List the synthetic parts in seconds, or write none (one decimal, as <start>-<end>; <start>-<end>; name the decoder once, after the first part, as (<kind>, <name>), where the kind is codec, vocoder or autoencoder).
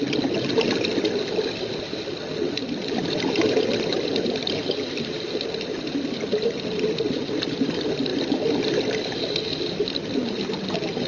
none